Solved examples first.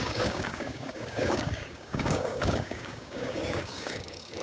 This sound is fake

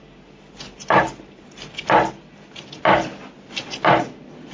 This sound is real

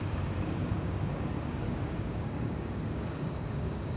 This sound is fake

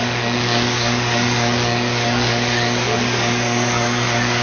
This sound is fake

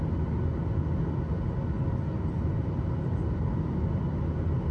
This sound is real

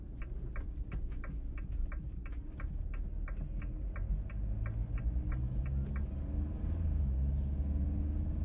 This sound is real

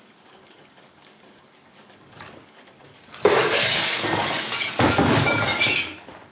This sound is fake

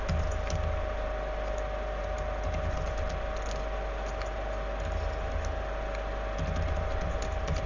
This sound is real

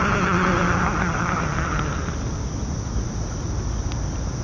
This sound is real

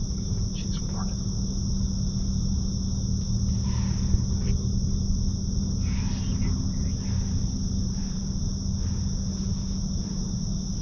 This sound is real